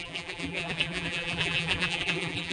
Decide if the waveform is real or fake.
fake